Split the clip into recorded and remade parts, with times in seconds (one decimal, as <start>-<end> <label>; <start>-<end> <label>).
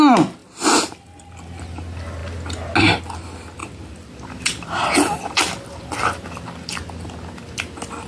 0.0-3.6 recorded; 3.6-5.9 remade; 5.9-8.1 recorded